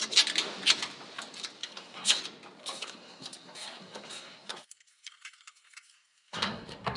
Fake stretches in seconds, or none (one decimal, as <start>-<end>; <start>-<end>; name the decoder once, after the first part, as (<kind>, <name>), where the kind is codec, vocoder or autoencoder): 1.6-2.2 (codec, SNAC); 2.6-7.0